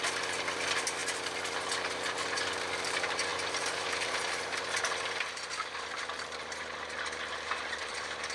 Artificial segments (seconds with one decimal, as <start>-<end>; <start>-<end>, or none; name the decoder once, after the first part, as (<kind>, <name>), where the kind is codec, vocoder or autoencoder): 0.0-8.3 (vocoder, BigVGAN v2)